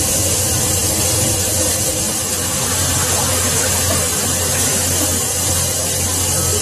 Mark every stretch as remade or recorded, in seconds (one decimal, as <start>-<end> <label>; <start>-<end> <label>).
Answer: 0.0-6.6 recorded